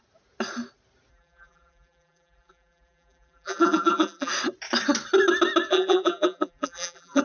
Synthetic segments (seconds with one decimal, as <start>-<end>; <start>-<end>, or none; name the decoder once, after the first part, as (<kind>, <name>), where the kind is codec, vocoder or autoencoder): 1.1-4.3 (vocoder, BigVGAN v2); 5.7-7.2

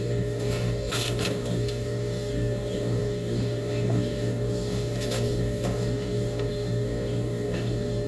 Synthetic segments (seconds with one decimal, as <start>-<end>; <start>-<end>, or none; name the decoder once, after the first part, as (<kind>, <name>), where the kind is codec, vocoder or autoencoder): 0.0-8.1 (codec, DAC)

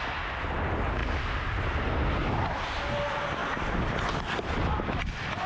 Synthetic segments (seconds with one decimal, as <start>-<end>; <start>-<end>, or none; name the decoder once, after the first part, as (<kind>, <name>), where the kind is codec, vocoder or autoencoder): none